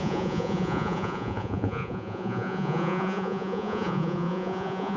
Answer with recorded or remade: remade